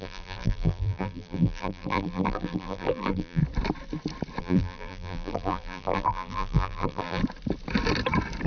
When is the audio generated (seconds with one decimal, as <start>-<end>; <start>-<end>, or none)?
0.0-3.4; 4.4-7.2